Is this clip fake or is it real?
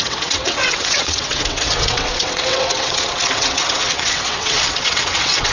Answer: fake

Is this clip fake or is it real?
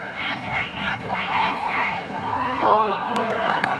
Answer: fake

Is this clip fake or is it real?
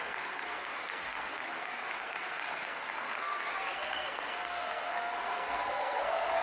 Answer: fake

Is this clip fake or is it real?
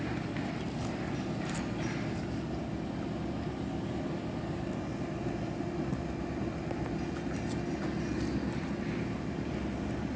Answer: real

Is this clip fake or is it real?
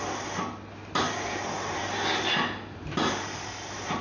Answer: real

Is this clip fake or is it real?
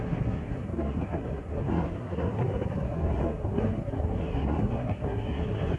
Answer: fake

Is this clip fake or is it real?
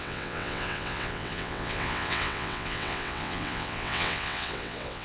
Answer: fake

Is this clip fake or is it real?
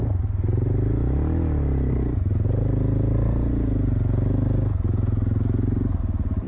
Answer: real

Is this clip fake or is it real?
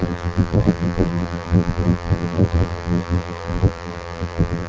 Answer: fake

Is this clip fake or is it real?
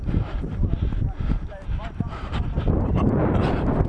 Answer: fake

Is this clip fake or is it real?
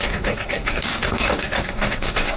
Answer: fake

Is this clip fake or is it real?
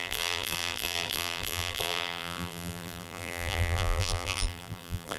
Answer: fake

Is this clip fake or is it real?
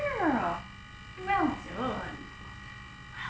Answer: real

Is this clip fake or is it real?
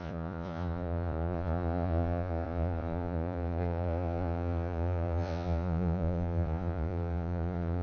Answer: fake